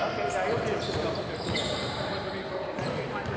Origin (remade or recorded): recorded